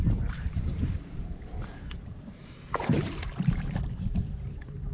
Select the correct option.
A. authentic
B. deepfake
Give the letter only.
B